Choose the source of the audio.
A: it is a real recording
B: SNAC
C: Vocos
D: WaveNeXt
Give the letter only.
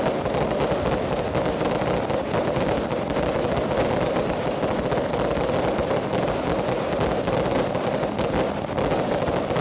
A